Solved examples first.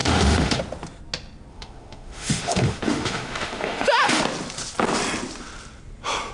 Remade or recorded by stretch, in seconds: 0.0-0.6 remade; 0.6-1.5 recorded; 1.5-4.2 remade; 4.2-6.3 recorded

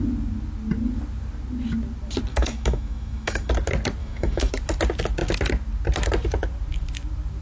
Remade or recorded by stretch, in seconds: 0.0-2.3 recorded; 2.3-3.5 remade; 3.5-4.0 recorded; 4.0-4.5 remade; 4.5-7.4 recorded

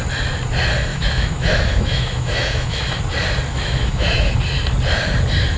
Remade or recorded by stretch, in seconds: 0.0-0.9 recorded; 0.9-3.0 remade; 3.0-3.5 recorded; 3.5-4.3 remade; 4.3-5.6 recorded

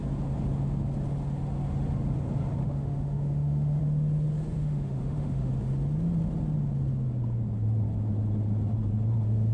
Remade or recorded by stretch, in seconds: 0.0-2.6 recorded; 2.6-3.8 remade; 3.8-4.6 recorded; 4.6-5.5 remade; 5.5-9.5 recorded

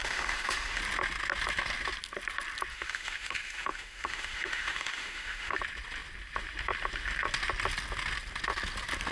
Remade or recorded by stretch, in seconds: 0.0-0.8 remade; 0.8-2.7 recorded; 2.7-5.6 remade; 5.6-9.1 recorded

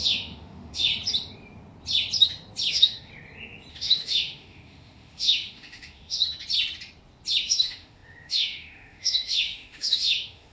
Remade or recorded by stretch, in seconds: 0.0-0.9 remade; 0.9-2.7 recorded; 2.7-3.1 remade; 3.1-3.7 recorded; 3.7-6.2 remade; 6.2-7.4 recorded; 7.4-10.5 remade

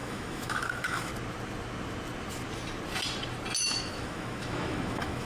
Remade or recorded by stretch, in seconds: 0.0-1.1 remade; 1.1-3.6 recorded; 3.6-5.2 remade